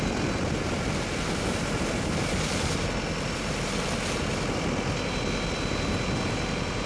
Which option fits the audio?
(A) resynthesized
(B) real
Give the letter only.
B